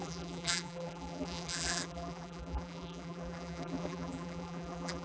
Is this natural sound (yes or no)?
no